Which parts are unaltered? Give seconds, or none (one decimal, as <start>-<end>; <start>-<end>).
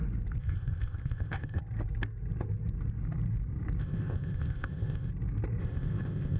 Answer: 0.0-0.4; 1.6-3.8; 5.1-5.6